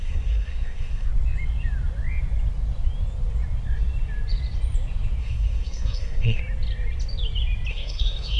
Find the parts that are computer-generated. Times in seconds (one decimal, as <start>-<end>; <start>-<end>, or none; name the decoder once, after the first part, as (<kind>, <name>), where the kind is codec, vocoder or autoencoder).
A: 0.0-1.1 (codec, SNAC); 5.2-6.4; 7.7-8.4